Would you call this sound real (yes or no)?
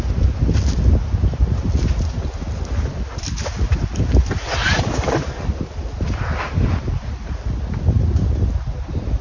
yes